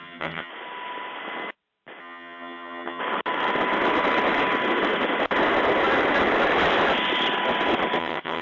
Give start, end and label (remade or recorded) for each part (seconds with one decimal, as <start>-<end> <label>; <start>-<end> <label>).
0.0-0.5 remade; 0.5-2.0 recorded; 2.0-3.0 remade; 3.0-8.0 recorded; 8.0-8.4 remade